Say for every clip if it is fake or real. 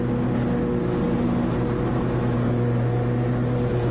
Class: real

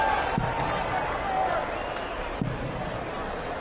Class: real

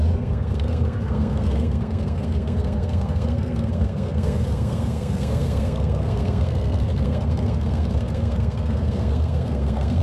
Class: fake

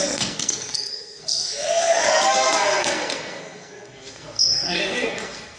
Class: fake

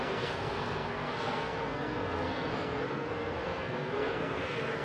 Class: fake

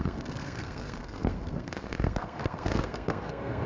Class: fake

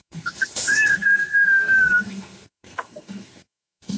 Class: fake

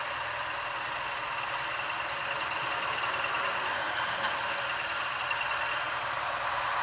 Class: real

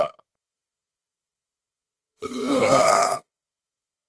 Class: fake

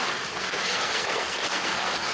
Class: fake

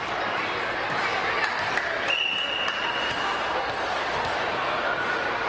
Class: real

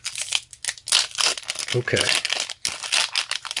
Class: real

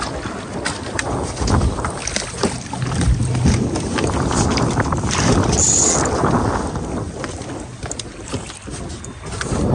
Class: real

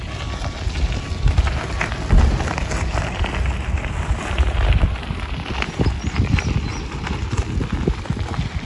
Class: real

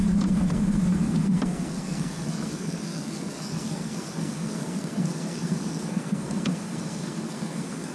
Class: fake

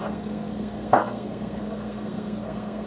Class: fake